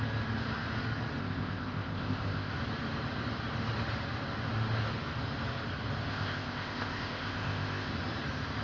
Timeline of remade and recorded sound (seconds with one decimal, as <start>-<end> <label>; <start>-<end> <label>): 0.0-1.2 recorded; 1.2-2.5 remade; 2.5-6.1 recorded; 6.1-7.9 remade; 7.9-8.6 recorded